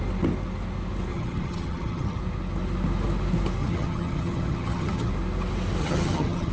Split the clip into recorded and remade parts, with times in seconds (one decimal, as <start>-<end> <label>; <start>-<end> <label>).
0.0-1.1 recorded; 1.1-2.2 remade; 2.2-3.6 recorded; 3.6-5.1 remade; 5.1-5.8 recorded; 5.8-6.5 remade